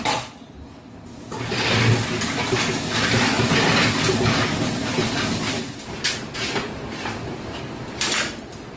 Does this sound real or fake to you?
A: real